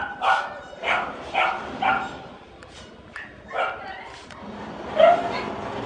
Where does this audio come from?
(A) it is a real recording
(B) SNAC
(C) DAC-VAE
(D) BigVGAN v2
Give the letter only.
A